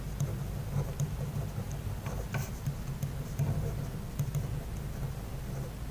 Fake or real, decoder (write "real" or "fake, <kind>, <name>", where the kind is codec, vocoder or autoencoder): real